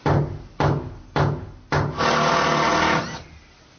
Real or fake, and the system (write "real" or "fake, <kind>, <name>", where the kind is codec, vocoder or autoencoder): real